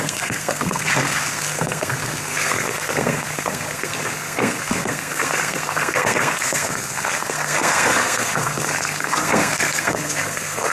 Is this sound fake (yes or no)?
yes